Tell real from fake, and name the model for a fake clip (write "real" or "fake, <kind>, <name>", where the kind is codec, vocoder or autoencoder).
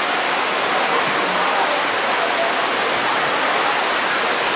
real